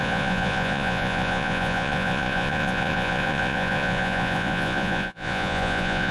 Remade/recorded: remade